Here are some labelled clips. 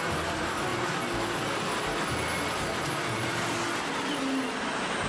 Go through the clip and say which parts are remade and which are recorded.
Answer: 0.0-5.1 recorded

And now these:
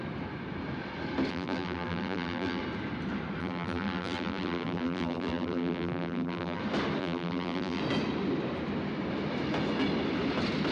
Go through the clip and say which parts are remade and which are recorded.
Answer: 0.0-1.3 recorded; 1.3-2.6 remade; 2.6-3.4 recorded; 3.4-6.6 remade; 6.6-7.0 recorded; 7.0-7.8 remade; 7.8-10.7 recorded

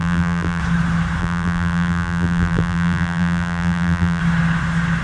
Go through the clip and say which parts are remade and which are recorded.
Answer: 0.0-0.6 remade; 0.6-1.2 recorded; 1.2-4.2 remade; 4.2-5.0 recorded

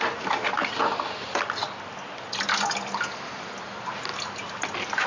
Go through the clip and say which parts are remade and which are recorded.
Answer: 0.0-5.1 recorded

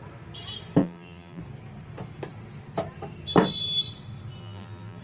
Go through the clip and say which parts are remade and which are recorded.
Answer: 0.0-0.8 recorded; 0.8-1.4 remade; 1.4-4.4 recorded; 4.4-5.0 remade

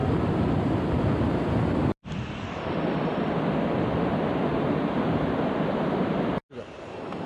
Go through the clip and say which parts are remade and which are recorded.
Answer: 0.0-4.5 recorded; 4.5-5.7 remade; 5.7-7.3 recorded

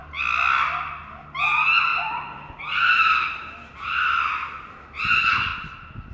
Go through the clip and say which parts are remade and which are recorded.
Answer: 0.0-1.0 remade; 1.0-1.9 recorded; 1.9-5.0 remade; 5.0-5.5 recorded; 5.5-6.1 remade

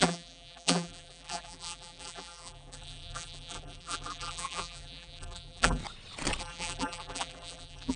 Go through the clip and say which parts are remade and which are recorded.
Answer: 0.0-5.8 remade; 5.8-6.4 recorded; 6.4-8.0 remade